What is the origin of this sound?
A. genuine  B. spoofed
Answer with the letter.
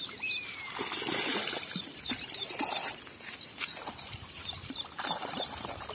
B